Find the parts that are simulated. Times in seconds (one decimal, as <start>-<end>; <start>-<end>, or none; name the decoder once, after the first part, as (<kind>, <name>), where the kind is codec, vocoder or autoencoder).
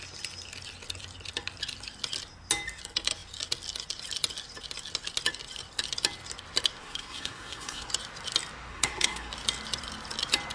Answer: 6.8-7.9 (codec, SNAC); 8.7-9.3